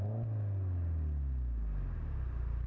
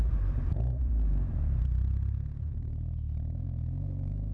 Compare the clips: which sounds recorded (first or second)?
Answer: first